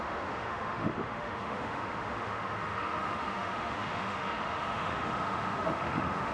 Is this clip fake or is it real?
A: fake